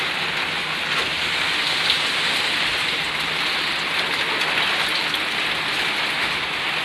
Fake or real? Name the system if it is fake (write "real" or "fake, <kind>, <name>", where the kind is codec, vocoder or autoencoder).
real